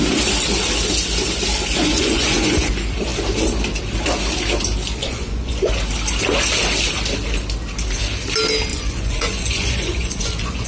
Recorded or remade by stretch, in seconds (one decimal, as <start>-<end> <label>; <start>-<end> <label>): 0.0-1.8 recorded; 1.8-2.7 remade; 2.7-5.0 recorded; 5.0-5.7 remade; 5.7-8.7 recorded; 8.7-10.7 remade